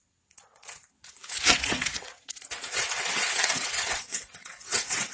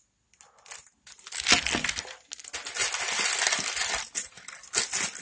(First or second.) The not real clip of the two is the first